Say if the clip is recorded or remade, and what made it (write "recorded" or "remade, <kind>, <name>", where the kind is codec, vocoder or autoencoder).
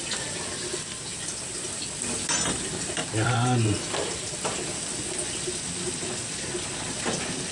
recorded